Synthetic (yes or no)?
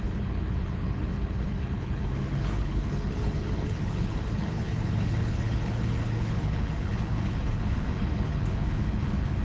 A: yes